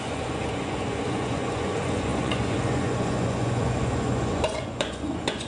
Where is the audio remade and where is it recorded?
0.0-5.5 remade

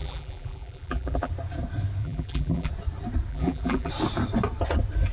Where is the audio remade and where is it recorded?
0.0-1.3 remade; 1.3-2.0 recorded; 2.0-2.7 remade; 2.7-3.3 recorded; 3.3-3.9 remade; 3.9-5.1 recorded

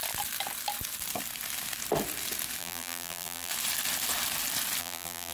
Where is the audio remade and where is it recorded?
0.0-2.6 recorded; 2.6-3.5 remade; 3.5-4.8 recorded; 4.8-5.3 remade

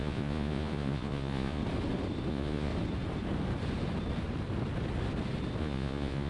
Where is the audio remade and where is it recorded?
0.0-1.6 remade; 1.6-2.3 recorded; 2.3-2.7 remade; 2.7-5.6 recorded; 5.6-6.3 remade